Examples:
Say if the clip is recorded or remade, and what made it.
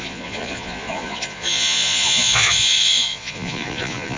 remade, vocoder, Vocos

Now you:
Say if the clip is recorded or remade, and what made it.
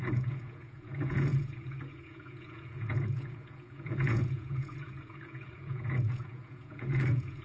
remade, vocoder, Vocos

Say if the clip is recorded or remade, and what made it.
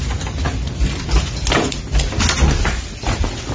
recorded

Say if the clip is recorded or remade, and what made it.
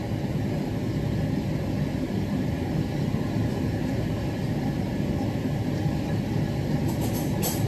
recorded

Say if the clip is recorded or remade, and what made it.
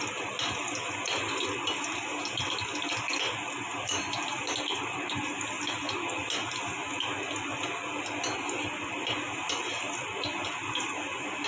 recorded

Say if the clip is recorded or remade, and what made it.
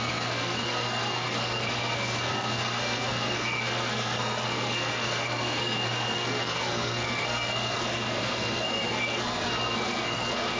remade, codec, SNAC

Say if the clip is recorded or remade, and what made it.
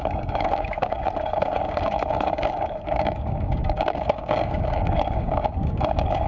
remade, codec, DAC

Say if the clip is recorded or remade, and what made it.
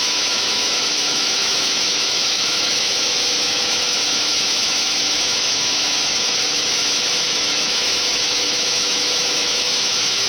remade, autoencoder, DAC-VAE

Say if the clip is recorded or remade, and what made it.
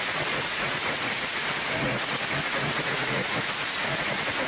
remade, vocoder, Vocos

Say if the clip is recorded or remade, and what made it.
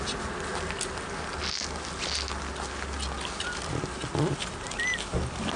recorded